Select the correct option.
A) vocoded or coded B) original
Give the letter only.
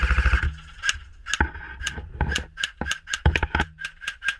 B